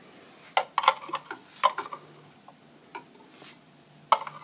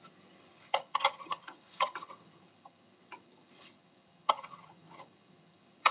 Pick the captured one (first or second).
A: first